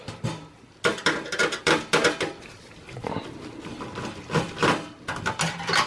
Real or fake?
real